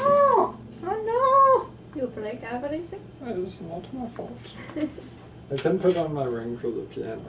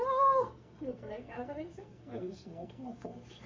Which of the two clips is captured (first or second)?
first